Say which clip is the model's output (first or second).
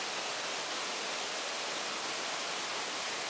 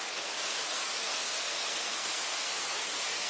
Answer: second